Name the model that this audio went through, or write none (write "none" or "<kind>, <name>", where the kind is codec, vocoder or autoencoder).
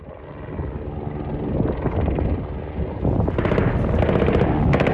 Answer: none